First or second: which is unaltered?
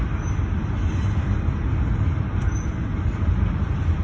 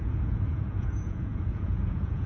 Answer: first